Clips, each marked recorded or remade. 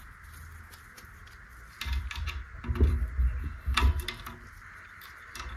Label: recorded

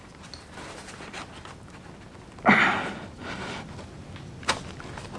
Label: recorded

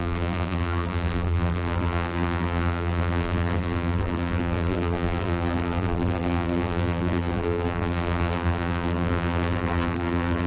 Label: remade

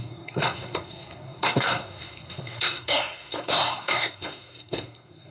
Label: remade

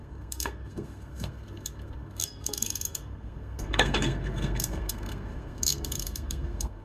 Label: remade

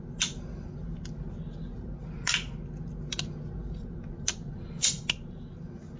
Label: recorded